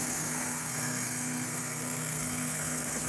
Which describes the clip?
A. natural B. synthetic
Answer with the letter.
B